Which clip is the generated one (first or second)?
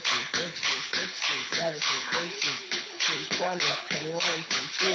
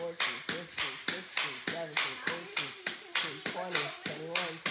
first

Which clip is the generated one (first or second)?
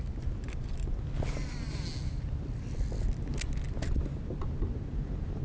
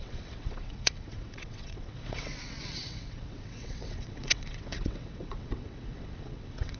second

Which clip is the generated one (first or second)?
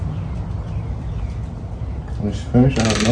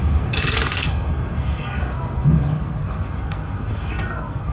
second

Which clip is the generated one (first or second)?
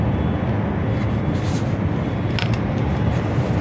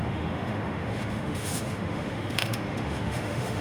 second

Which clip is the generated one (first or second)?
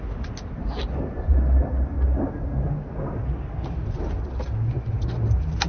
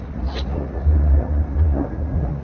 second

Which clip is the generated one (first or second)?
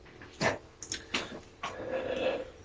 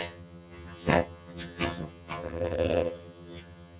second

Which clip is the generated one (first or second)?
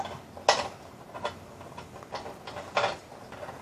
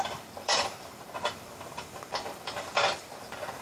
second